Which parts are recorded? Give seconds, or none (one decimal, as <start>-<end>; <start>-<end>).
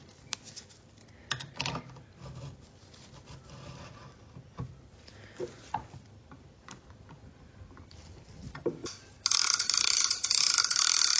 8.8-10.6